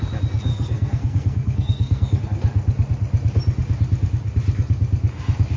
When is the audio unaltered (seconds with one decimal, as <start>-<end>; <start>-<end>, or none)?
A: 0.0-0.5; 2.2-5.6